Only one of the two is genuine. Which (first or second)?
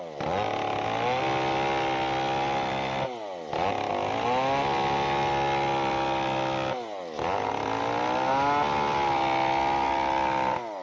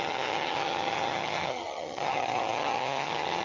first